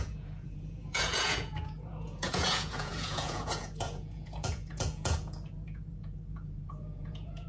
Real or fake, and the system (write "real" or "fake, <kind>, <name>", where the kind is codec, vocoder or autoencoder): fake, vocoder, Vocos